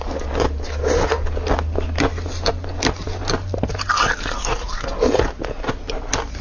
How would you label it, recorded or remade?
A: recorded